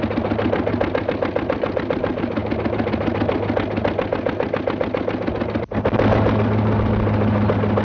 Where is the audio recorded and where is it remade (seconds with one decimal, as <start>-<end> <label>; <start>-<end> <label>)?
0.0-7.8 recorded